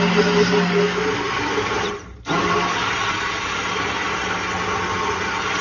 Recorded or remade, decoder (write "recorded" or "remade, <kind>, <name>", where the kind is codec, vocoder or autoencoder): recorded